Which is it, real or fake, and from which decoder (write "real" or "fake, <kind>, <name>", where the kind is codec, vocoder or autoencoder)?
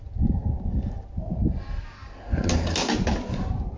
real